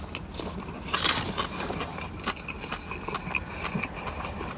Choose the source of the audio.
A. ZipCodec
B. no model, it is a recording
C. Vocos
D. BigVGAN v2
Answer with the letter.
B